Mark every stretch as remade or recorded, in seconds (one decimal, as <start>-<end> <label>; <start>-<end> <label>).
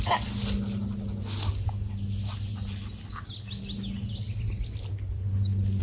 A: 0.0-5.8 recorded